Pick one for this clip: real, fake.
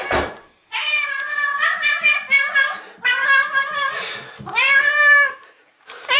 fake